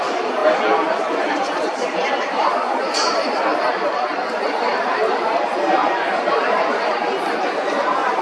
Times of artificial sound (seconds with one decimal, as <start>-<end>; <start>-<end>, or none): 0.0-0.4; 1.5-8.2